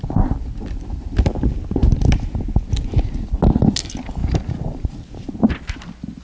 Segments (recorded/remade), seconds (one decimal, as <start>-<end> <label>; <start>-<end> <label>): 0.0-4.2 recorded; 4.2-5.0 remade; 5.0-6.2 recorded